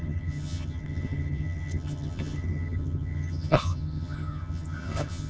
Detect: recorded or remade remade